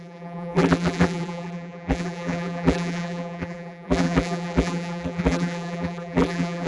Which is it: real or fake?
fake